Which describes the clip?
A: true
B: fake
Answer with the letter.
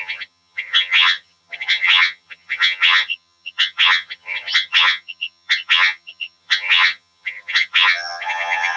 B